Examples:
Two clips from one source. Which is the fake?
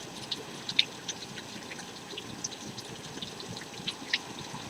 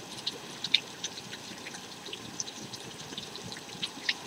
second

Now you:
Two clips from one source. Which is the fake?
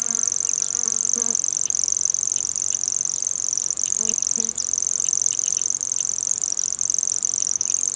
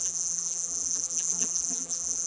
second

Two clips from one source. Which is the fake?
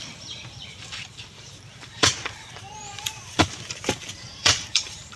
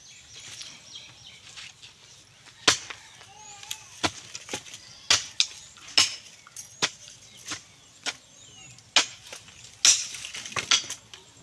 first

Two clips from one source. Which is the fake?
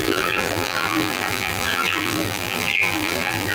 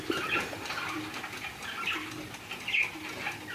first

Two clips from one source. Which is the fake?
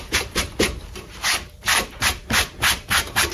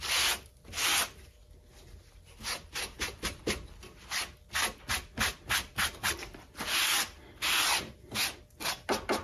first